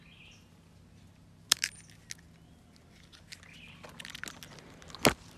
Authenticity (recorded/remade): recorded